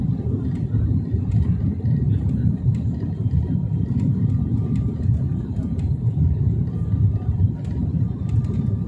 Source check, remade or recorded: remade